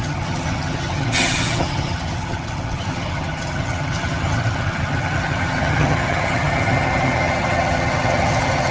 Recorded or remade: remade